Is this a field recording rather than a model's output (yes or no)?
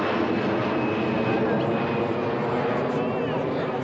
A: yes